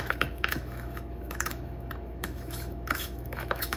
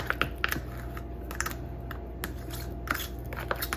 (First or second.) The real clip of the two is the second